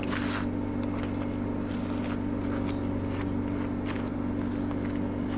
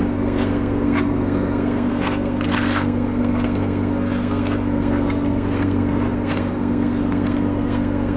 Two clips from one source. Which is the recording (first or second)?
first